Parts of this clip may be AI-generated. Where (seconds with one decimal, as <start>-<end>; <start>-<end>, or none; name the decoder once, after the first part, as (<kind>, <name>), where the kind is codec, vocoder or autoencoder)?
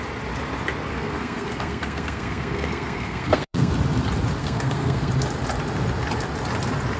0.9-3.7 (codec, SNAC); 4.4-5.1